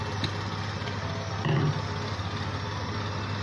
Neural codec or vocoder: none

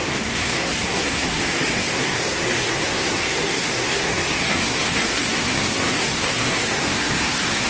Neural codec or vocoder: codec, SNAC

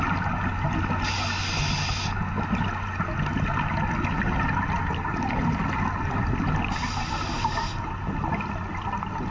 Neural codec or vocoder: none